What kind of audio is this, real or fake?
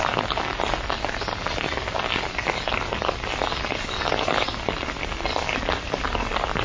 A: real